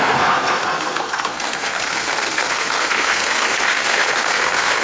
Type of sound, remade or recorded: remade